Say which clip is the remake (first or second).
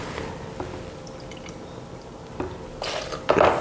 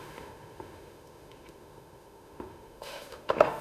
second